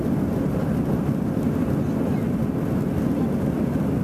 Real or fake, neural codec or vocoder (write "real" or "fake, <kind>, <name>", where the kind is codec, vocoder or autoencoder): real